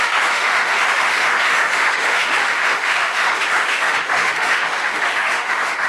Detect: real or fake fake